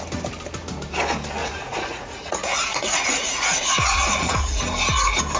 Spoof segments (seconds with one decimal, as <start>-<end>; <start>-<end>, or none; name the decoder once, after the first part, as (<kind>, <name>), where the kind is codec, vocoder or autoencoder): 1.4-4.6 (vocoder, Vocos)